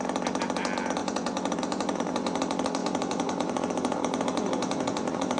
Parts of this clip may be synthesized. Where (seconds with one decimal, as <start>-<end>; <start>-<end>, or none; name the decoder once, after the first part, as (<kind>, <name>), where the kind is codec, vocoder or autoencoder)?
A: 1.0-2.4 (vocoder, Vocos); 2.8-5.4